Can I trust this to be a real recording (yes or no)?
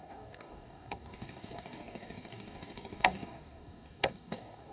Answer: no